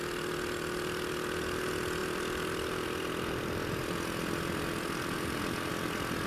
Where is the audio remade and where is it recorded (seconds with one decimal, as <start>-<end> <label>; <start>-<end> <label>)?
0.0-2.0 recorded; 2.0-5.7 remade; 5.7-6.3 recorded